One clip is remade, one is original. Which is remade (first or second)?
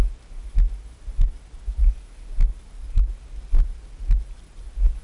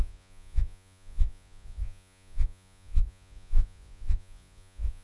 second